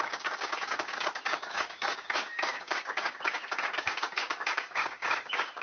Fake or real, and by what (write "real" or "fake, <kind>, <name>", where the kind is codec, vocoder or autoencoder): fake, codec, DAC